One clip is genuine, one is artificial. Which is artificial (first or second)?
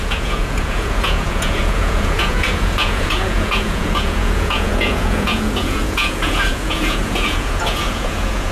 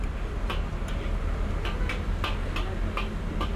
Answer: first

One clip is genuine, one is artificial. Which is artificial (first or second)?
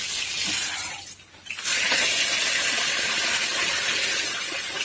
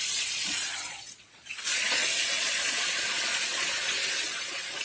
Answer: second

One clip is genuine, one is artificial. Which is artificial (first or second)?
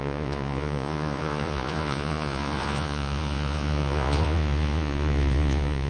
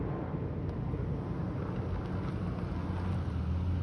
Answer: first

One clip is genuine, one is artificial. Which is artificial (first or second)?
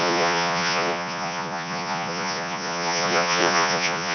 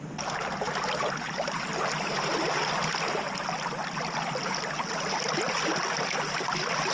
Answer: first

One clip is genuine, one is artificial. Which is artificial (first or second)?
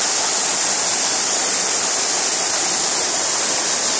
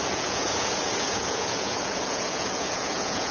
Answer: second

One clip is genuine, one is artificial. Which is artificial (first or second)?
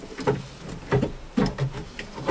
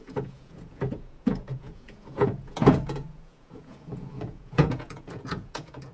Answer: second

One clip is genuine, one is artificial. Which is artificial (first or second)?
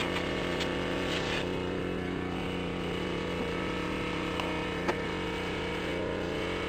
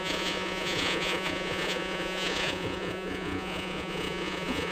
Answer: second